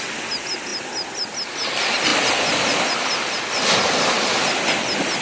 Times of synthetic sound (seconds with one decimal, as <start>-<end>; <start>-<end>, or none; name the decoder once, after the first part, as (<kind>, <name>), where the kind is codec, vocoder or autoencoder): 0.7-1.3 (vocoder, BigVGAN v2)